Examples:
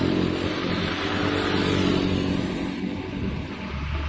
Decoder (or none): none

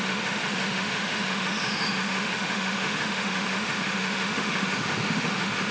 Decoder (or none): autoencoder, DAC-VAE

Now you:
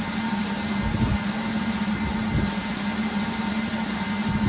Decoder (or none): none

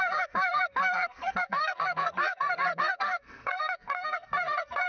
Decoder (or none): codec, SNAC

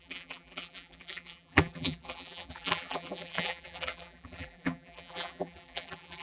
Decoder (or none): vocoder, BigVGAN v2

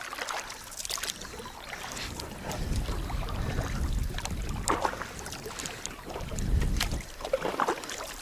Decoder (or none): none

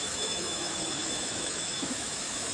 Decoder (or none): autoencoder, DAC-VAE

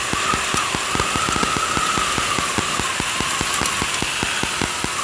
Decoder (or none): none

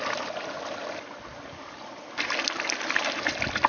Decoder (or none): none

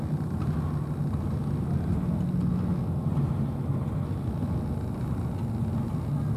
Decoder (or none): none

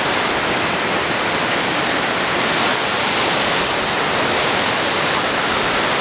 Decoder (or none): none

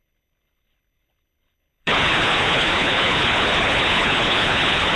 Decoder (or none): codec, HILCodec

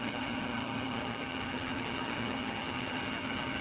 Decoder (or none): vocoder, HiFi-GAN